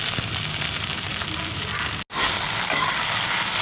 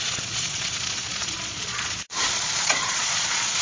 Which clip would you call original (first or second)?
first